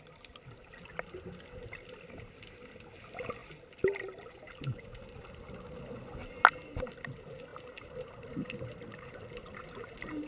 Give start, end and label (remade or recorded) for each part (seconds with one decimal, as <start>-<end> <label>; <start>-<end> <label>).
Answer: 0.0-7.5 recorded; 7.5-9.2 remade; 9.2-10.3 recorded